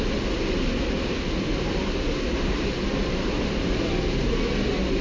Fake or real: real